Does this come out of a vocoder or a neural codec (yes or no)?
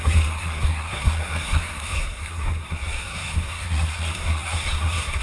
yes